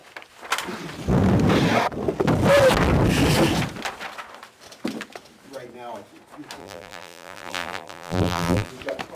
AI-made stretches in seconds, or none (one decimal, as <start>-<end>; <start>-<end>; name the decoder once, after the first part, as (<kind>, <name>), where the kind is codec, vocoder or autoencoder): 6.6-8.7 (vocoder, BigVGAN v2)